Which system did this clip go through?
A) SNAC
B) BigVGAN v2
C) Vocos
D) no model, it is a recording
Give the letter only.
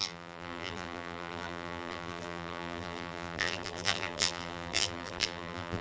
B